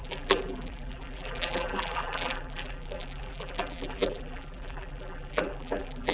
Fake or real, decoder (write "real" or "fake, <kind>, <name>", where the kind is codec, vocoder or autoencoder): fake, vocoder, BigVGAN v2